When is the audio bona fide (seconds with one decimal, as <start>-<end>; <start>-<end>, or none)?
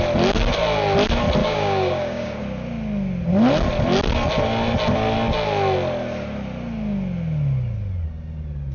0.0-1.4; 2.4-8.7